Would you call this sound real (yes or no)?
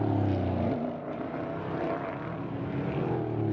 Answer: yes